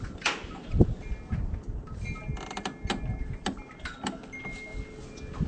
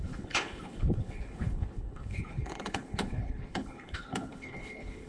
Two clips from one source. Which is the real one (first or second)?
first